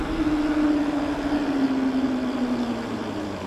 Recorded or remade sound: recorded